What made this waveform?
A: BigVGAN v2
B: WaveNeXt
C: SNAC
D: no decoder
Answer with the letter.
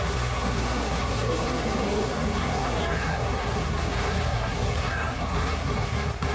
C